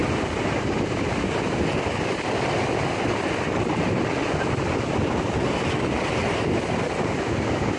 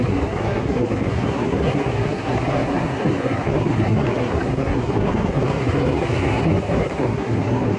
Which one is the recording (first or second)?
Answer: first